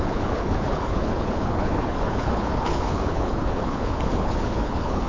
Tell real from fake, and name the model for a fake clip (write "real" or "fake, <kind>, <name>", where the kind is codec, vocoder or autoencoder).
fake, codec, HILCodec